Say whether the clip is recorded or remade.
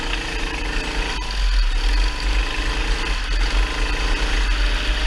recorded